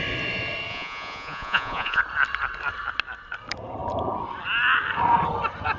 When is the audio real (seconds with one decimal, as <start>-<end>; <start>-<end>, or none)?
0.0-0.7; 2.0-5.8